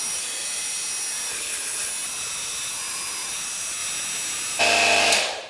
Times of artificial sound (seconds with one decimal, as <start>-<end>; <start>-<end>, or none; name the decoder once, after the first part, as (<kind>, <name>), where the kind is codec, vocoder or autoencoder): 1.3-1.9 (codec, HILCodec)